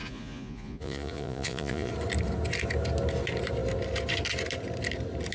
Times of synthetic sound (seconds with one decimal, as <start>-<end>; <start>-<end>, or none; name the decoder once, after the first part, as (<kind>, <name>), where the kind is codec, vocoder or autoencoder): 0.0-1.9 (vocoder, Vocos)